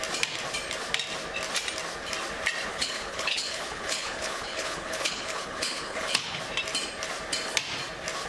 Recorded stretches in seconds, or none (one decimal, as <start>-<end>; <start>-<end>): 0.0-2.7; 6.4-8.3